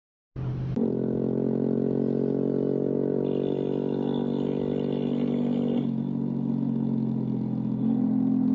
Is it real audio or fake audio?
real